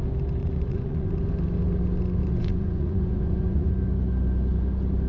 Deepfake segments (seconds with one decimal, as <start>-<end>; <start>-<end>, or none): 0.4-1.1; 2.2-3.7